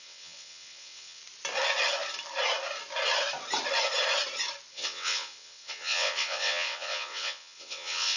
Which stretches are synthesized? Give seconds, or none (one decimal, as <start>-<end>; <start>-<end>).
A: 0.0-1.2; 4.7-8.2